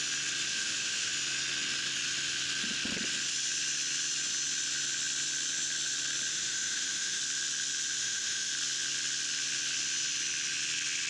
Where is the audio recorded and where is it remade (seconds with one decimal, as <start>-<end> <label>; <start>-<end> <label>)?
0.0-0.5 recorded; 0.5-1.1 remade; 1.1-6.3 recorded; 6.3-7.2 remade; 7.2-8.0 recorded; 8.0-8.5 remade; 8.5-11.1 recorded